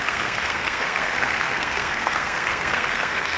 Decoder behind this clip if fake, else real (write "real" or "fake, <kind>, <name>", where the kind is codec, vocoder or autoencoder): fake, codec, SNAC